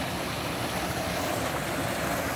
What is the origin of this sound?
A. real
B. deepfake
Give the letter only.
A